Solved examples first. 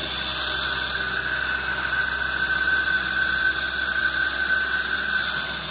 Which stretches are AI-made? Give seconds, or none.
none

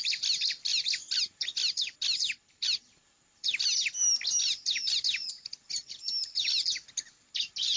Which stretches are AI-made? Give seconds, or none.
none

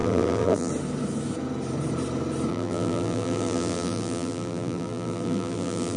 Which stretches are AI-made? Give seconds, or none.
0.0-0.7 (vocoder, BigVGAN v2); 2.5-6.0

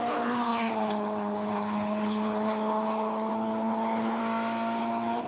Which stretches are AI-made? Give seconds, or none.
0.0-4.2 (codec, HILCodec); 4.8-5.3

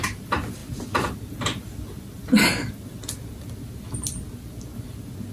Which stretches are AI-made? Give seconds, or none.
none